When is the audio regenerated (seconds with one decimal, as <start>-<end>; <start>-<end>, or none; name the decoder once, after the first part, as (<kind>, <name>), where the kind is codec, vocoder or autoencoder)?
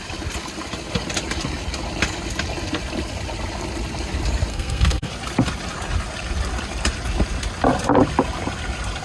4.5-5.1 (codec, SNAC)